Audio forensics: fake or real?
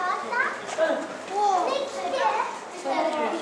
real